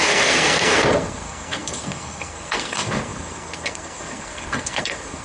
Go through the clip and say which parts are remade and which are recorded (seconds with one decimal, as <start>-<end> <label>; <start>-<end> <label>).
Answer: 0.0-5.2 remade